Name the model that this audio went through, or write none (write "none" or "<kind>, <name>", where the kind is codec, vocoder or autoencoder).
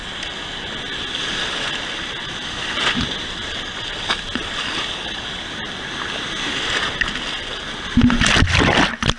none